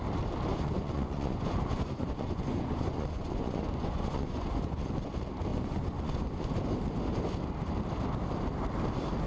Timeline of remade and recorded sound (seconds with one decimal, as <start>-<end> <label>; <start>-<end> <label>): 0.0-0.5 recorded; 0.5-4.9 remade; 4.9-5.5 recorded; 5.5-6.5 remade; 6.5-9.3 recorded